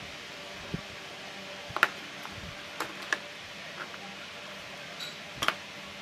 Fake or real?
real